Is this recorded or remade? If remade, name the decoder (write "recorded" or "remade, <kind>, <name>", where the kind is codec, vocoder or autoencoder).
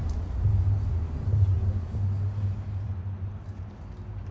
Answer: recorded